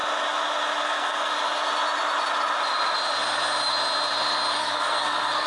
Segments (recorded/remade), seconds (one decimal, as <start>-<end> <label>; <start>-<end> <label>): 0.0-0.8 recorded; 0.8-1.3 remade; 1.3-4.6 recorded; 4.6-5.5 remade